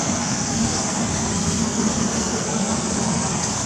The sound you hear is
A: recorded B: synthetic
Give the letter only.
B